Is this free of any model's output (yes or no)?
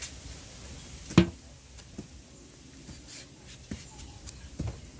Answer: yes